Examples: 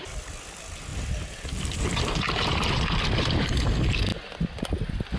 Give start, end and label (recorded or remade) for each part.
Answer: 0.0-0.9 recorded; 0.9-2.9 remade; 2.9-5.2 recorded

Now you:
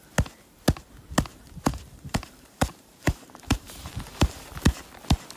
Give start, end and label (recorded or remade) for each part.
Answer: 0.0-1.3 recorded; 1.3-4.5 remade; 4.5-5.4 recorded

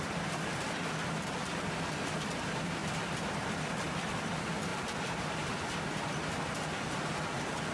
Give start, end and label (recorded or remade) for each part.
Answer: 0.0-2.8 recorded; 2.8-3.7 remade; 3.7-4.7 recorded; 4.7-5.2 remade; 5.2-7.7 recorded

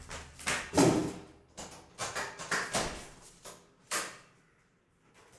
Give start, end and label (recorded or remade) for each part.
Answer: 0.0-5.4 recorded